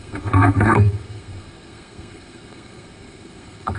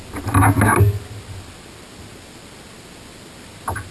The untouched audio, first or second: second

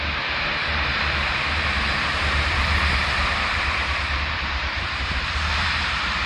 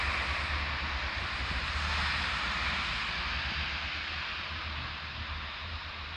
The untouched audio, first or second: second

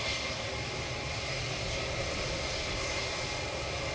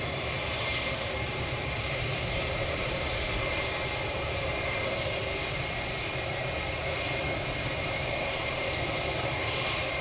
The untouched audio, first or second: first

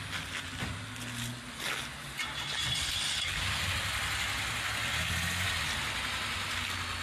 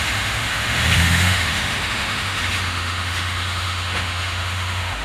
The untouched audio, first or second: first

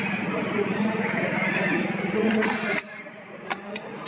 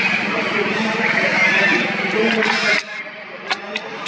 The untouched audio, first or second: second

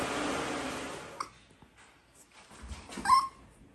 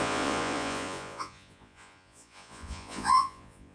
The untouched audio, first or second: first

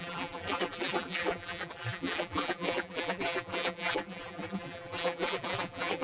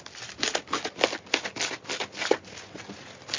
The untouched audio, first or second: second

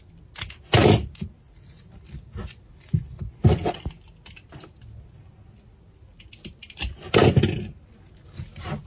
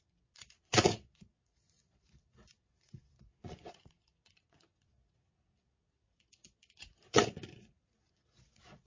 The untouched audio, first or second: first